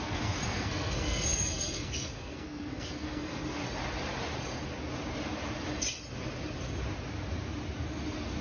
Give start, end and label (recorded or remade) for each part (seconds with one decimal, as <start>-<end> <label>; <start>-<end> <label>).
0.0-3.6 remade; 3.6-8.4 recorded